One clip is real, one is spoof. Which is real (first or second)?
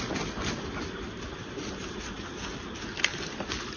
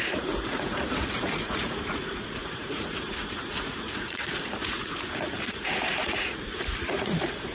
first